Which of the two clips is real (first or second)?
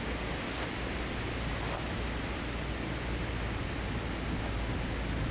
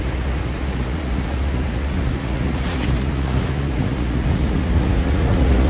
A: first